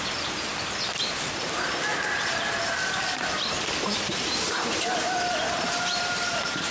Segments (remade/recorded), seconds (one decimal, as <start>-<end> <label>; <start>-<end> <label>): 0.0-0.5 remade; 0.5-2.7 recorded; 2.7-6.7 remade